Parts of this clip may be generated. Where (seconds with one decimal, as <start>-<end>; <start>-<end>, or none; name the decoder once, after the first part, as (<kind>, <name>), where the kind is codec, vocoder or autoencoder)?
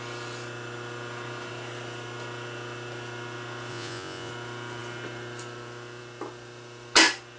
3.7-4.3 (vocoder, Vocos)